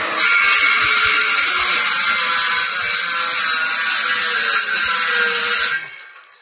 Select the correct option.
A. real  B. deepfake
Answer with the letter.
A